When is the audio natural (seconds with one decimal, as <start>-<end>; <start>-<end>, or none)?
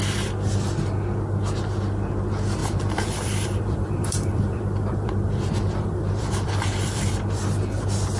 0.0-2.6; 7.5-8.2